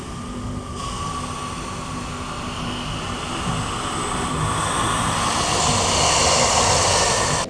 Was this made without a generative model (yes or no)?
yes